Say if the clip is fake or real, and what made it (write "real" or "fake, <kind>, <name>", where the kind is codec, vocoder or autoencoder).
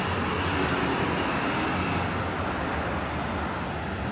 real